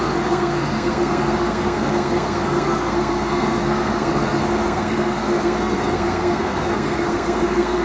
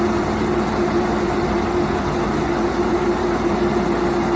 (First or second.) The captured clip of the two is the second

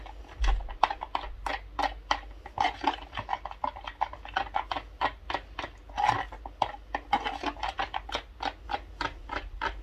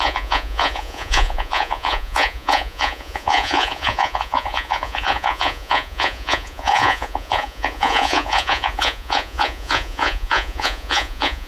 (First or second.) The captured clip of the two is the first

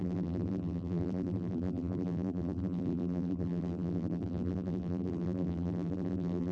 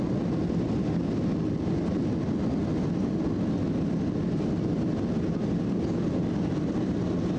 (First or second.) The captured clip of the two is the second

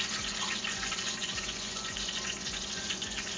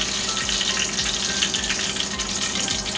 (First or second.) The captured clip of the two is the second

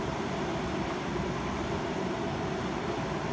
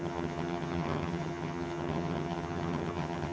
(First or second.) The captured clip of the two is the first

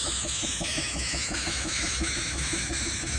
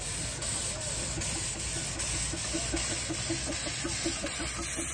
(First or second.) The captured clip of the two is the second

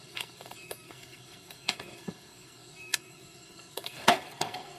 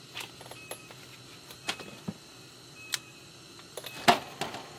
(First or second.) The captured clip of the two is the second